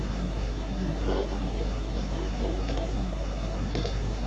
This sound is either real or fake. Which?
fake